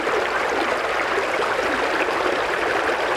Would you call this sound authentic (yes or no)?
yes